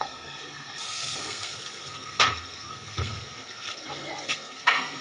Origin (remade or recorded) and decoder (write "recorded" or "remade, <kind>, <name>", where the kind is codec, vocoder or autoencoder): remade, codec, SNAC